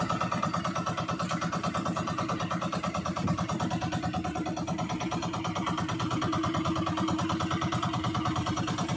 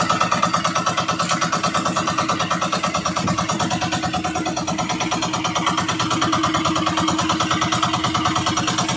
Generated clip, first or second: first